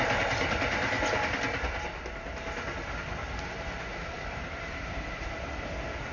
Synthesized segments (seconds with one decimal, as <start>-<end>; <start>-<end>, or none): 3.9-5.5